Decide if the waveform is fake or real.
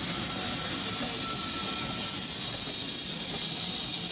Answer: real